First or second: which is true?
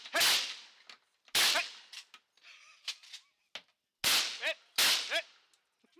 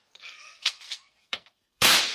first